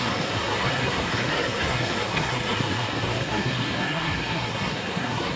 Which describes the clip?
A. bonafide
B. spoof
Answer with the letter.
B